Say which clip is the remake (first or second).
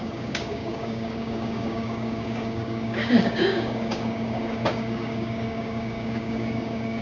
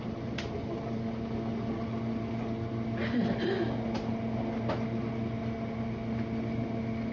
first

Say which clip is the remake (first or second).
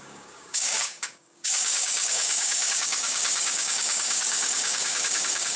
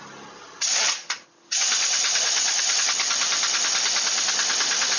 first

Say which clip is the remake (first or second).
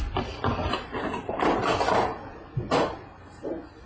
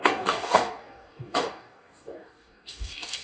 second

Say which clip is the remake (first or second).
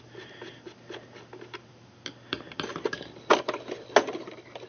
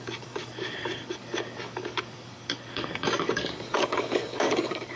second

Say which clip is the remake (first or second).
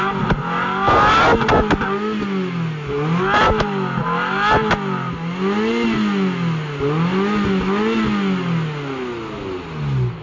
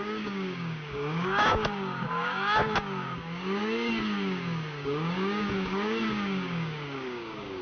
second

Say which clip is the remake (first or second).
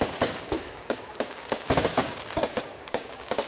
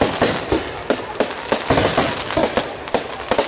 first